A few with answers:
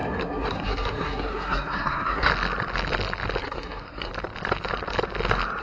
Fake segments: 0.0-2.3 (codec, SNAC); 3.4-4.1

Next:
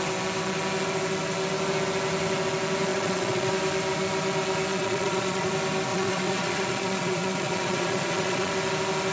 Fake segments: 2.9-3.5 (vocoder, Vocos); 4.7-5.5; 5.9-8.5

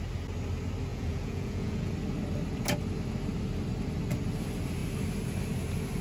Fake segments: 0.9-1.9 (vocoder, Vocos)